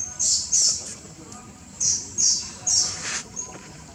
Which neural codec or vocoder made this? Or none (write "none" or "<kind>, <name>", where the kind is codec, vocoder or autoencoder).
vocoder, BigVGAN v2